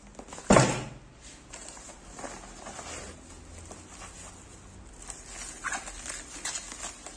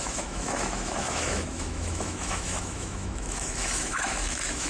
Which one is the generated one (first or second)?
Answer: second